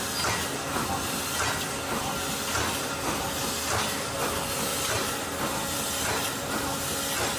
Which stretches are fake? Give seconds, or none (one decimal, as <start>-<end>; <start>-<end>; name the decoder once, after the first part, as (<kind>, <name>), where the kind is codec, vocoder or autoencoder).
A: 4.7-6.5 (vocoder, BigVGAN v2)